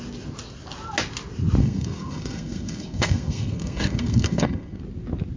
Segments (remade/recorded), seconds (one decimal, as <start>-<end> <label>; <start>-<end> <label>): 0.0-1.6 recorded; 1.6-4.8 remade; 4.8-5.4 recorded